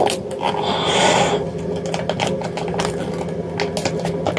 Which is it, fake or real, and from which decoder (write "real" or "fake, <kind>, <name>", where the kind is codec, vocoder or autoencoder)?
real